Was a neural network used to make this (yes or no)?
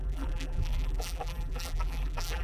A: yes